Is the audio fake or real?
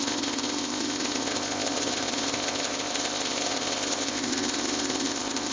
fake